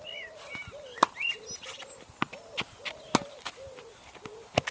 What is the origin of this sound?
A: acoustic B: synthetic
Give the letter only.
A